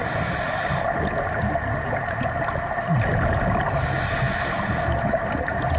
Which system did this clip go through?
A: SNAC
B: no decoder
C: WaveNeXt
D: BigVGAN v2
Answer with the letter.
B